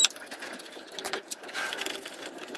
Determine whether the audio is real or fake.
fake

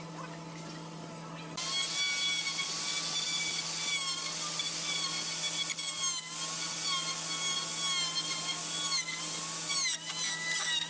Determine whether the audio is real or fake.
real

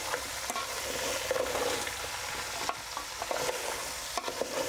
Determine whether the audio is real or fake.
real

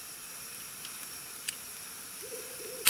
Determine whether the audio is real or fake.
real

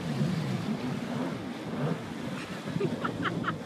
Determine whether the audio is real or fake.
real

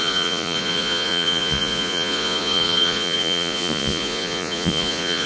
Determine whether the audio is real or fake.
fake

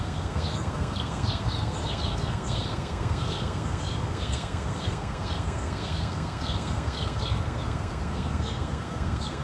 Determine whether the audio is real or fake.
fake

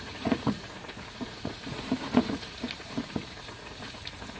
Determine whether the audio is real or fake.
fake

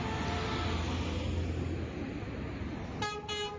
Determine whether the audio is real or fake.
real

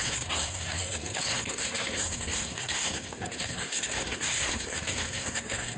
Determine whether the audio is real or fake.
fake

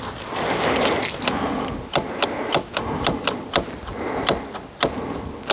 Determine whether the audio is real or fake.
real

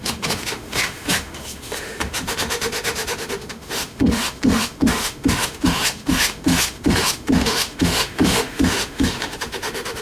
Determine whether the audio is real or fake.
fake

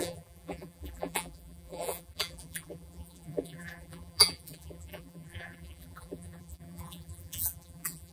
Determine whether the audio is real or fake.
fake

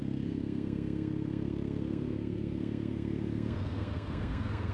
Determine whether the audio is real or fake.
fake